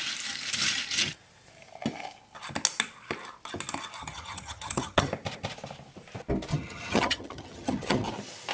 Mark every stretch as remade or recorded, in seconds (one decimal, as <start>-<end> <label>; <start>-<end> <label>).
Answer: 0.0-4.0 recorded; 4.0-5.1 remade; 5.1-6.5 recorded; 6.5-8.1 remade; 8.1-8.5 recorded